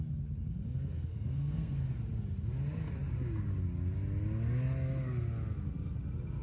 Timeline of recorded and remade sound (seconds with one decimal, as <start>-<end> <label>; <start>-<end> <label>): 0.0-1.1 recorded; 1.1-1.8 remade; 1.8-6.4 recorded